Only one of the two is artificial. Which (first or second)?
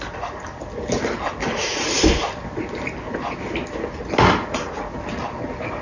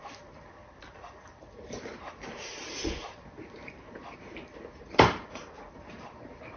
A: second